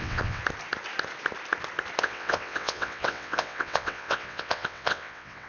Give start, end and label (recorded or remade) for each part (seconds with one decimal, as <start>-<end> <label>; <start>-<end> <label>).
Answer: 0.0-0.4 remade; 0.4-2.0 recorded; 2.0-5.5 remade